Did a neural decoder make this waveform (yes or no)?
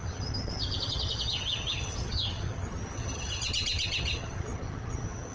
yes